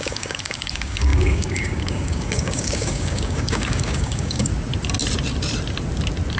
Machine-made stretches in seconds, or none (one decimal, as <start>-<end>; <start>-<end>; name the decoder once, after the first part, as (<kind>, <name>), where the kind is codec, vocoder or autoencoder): 0.0-4.5 (codec, DAC)